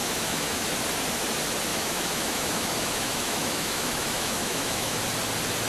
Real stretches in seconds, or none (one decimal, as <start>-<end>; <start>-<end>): 0.7-1.7; 5.0-5.7